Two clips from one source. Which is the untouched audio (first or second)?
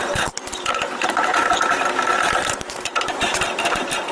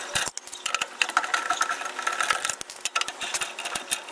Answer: second